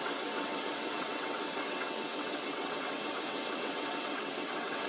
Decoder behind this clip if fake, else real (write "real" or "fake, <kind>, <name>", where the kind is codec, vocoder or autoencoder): fake, vocoder, WaveNeXt